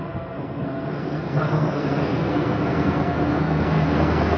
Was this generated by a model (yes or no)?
yes